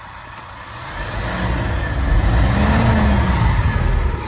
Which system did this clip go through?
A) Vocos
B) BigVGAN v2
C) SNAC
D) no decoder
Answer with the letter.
D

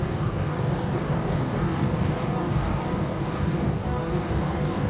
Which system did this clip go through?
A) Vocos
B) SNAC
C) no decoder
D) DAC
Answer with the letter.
D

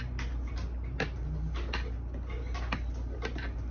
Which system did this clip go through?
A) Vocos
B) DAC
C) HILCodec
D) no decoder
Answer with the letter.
D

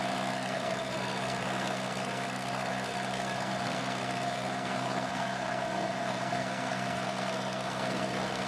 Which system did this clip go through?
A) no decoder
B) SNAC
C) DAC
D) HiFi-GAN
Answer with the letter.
B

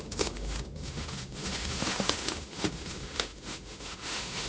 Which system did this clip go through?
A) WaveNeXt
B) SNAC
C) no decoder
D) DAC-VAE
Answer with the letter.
D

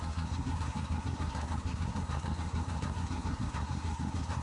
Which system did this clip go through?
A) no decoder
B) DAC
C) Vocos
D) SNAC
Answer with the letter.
D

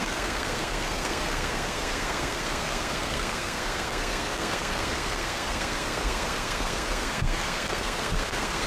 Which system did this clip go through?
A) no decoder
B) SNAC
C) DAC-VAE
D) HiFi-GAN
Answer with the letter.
B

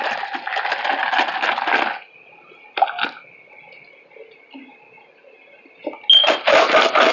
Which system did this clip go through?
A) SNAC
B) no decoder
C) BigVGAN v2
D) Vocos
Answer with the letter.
B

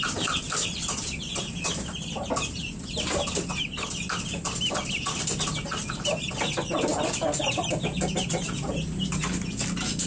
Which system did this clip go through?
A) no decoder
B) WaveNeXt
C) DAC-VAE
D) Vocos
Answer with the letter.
A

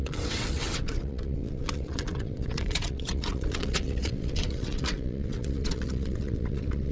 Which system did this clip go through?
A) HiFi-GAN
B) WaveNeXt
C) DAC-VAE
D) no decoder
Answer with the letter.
B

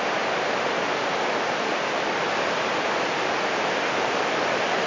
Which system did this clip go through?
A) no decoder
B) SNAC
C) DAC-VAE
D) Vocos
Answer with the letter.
A